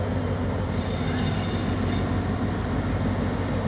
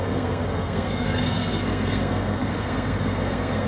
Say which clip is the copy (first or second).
second